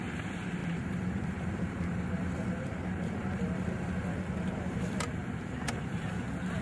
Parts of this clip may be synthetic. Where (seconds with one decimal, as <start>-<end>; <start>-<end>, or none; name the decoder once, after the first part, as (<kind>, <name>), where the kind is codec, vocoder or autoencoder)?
0.0-6.6 (vocoder, BigVGAN v2)